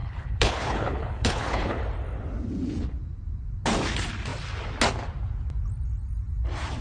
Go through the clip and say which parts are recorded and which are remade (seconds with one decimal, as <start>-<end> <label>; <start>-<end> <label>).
0.0-1.8 remade; 1.8-6.8 recorded